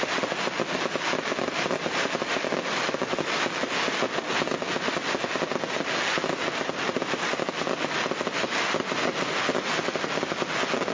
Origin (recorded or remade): recorded